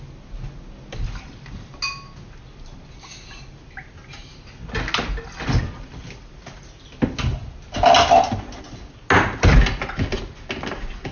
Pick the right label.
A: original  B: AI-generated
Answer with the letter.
A